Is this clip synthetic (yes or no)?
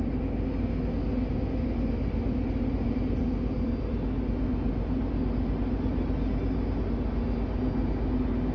no